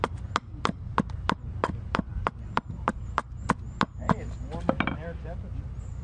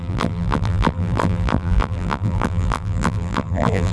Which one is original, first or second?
first